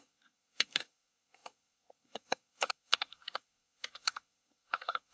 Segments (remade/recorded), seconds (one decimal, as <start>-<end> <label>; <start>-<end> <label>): 0.0-5.1 remade

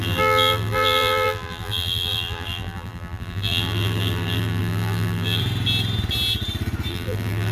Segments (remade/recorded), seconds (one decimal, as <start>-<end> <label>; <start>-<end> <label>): 0.0-5.4 remade; 5.4-6.9 recorded; 6.9-7.5 remade

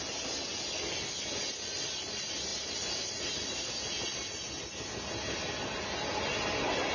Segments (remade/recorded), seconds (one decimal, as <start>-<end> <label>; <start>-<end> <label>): 0.0-6.9 recorded

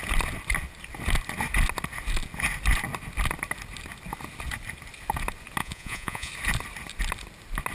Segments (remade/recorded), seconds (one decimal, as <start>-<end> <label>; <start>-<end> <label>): 0.0-5.6 recorded; 5.6-6.3 remade; 6.3-7.7 recorded